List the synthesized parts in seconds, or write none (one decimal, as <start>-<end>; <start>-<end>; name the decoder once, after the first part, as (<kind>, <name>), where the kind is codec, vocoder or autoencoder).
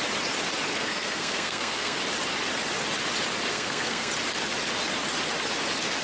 0.7-2.0 (codec, SNAC); 3.5-4.1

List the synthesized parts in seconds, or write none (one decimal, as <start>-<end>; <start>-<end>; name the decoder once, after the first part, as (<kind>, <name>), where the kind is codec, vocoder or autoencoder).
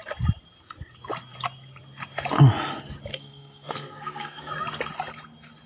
3.1-4.5 (codec, SNAC)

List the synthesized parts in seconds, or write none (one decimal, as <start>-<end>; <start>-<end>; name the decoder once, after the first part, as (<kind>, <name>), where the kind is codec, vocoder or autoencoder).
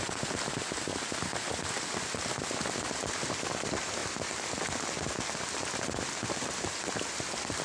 0.0-4.0 (vocoder, BigVGAN v2); 5.2-7.6